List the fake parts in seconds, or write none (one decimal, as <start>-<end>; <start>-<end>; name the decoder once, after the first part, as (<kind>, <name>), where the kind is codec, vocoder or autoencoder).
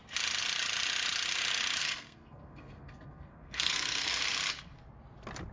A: 1.8-4.2 (codec, SNAC)